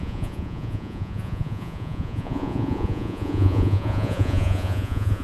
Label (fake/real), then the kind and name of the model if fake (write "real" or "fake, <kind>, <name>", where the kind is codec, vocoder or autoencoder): fake, vocoder, Vocos